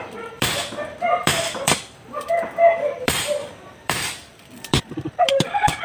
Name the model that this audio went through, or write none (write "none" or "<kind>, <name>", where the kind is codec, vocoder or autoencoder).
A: vocoder, BigVGAN v2